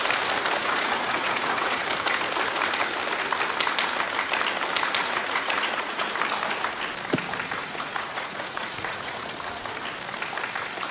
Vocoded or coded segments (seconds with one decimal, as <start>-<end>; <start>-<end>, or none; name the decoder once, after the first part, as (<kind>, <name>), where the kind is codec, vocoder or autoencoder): 0.6-1.8 (vocoder, Vocos); 5.0-6.0; 7.6-9.3